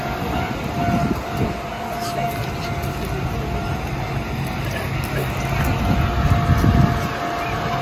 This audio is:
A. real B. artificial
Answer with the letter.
A